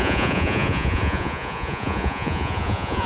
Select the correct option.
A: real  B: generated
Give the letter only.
B